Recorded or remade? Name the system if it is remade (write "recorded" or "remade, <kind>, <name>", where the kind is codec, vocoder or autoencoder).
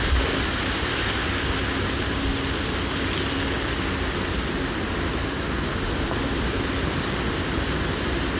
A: recorded